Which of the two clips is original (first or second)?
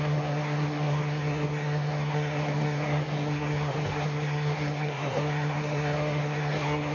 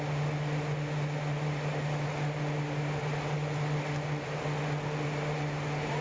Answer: second